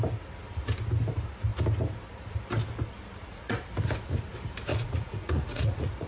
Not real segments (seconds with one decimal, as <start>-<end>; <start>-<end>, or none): 3.2-3.7; 4.7-6.1